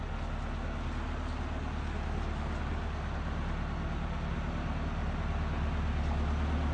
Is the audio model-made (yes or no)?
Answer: no